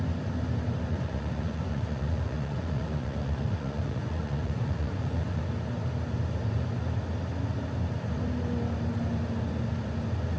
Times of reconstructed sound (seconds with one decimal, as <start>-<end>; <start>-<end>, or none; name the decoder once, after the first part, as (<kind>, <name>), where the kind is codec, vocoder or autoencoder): 0.9-5.4 (vocoder, Vocos)